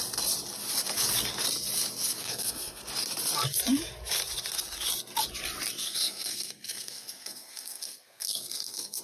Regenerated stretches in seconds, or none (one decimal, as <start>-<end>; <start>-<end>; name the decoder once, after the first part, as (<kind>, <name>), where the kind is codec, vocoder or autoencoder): 2.2-2.8 (codec, SNAC); 5.8-9.0